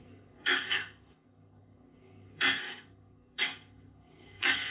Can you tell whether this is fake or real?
fake